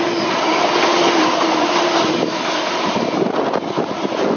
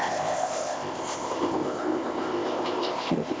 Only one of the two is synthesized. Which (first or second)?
second